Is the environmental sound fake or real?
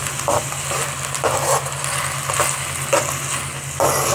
real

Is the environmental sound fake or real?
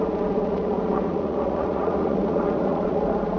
fake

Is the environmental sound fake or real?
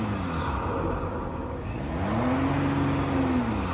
real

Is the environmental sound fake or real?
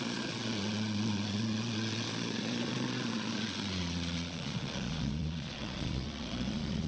fake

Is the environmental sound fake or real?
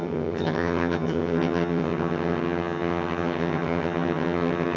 fake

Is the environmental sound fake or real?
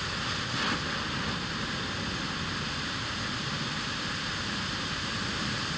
real